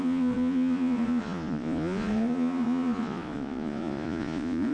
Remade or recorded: remade